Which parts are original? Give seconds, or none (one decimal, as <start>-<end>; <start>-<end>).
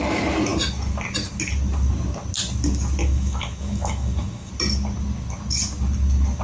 0.0-3.0; 4.5-6.4